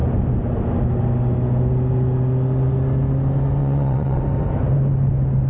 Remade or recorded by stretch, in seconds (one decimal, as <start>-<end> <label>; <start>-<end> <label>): 0.0-3.6 recorded; 3.6-4.2 remade; 4.2-5.5 recorded